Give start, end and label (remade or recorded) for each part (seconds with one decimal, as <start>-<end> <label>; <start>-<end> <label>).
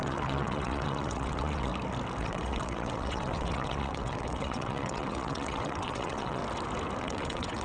0.0-1.7 remade; 1.7-2.2 recorded; 2.2-6.4 remade; 6.4-7.0 recorded; 7.0-7.6 remade